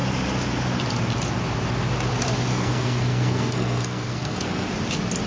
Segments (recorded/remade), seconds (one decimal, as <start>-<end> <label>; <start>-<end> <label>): 0.0-2.5 recorded; 2.5-4.7 remade; 4.7-5.3 recorded